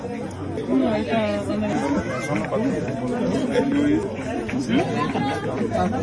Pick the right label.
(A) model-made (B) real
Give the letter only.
B